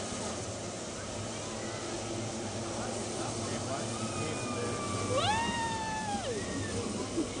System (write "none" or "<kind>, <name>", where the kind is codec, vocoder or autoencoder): none